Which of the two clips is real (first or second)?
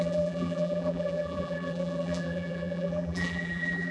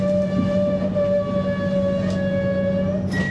second